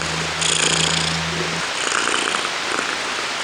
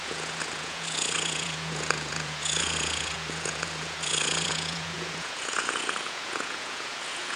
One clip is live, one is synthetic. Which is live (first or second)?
first